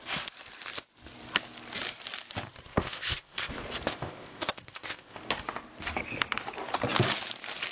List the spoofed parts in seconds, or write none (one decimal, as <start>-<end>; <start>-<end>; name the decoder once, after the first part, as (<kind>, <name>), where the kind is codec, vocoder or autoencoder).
2.7-3.5 (codec, ZipCodec); 3.9-5.2